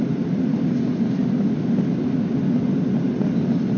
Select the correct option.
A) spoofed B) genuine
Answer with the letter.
B